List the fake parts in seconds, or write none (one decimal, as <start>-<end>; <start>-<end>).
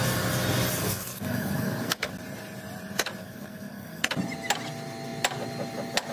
0.8-2.1; 3.2-4.1